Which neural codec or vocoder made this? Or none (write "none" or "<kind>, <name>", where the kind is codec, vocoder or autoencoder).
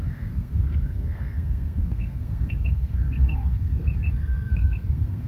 codec, SNAC